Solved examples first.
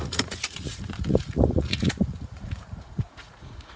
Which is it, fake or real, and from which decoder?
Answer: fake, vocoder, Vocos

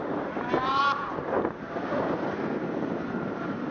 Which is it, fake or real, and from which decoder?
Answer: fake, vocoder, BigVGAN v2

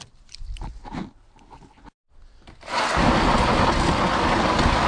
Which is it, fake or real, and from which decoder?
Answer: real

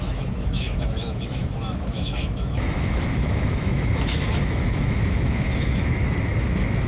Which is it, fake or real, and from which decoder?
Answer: fake, autoencoder, DAC-VAE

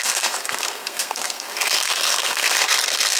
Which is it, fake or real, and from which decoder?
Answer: fake, codec, SNAC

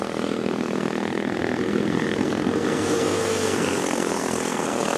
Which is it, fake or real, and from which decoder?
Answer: fake, codec, SNAC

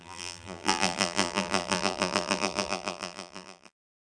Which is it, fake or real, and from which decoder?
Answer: fake, vocoder, BigVGAN v2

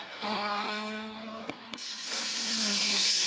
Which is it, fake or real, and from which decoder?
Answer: fake, codec, SNAC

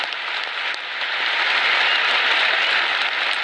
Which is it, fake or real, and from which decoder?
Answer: real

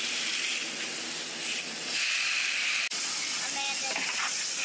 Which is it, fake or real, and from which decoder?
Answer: real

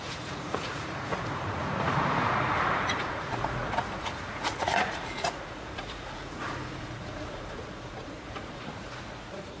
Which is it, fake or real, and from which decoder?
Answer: fake, vocoder, Vocos